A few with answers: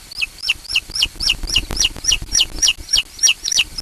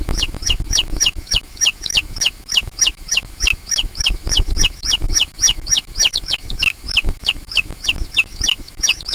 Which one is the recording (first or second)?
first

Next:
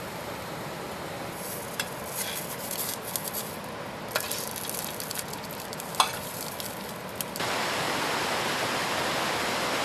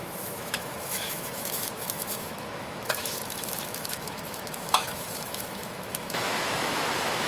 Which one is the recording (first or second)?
first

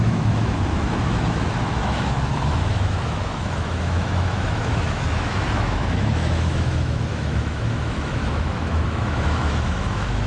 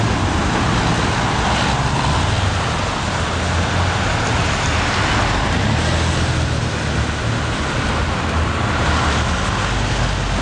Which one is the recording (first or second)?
second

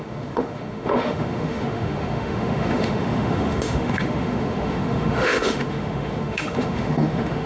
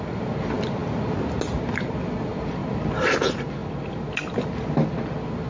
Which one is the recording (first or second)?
second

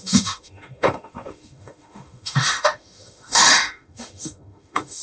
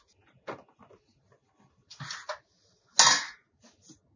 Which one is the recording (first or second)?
second